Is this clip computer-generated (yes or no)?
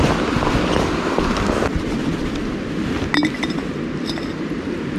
no